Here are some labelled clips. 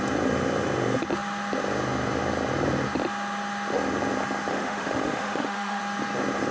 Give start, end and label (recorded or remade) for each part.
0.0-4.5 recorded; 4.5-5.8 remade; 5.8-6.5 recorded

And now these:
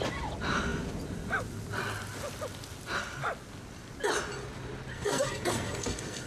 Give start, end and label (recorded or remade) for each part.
0.0-4.9 recorded; 4.9-6.3 remade

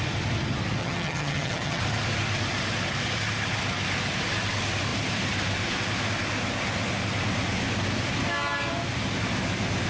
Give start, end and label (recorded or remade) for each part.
0.0-0.8 recorded; 0.8-1.8 remade; 1.8-9.9 recorded

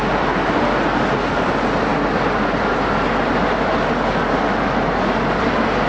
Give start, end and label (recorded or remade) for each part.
0.0-5.9 recorded